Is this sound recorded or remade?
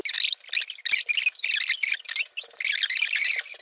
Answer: recorded